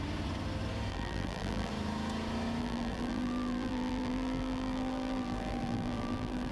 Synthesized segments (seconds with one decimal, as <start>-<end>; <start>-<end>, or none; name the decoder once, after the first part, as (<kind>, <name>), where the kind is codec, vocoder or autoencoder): 0.9-1.7 (vocoder, BigVGAN v2); 2.6-6.5